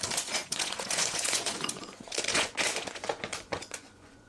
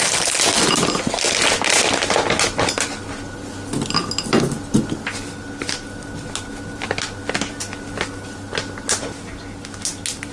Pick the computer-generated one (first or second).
first